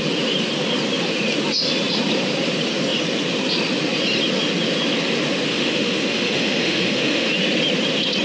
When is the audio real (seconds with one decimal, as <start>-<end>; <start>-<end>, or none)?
0.0-5.5; 7.3-8.2